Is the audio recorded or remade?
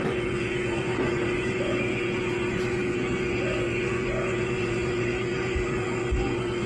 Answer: remade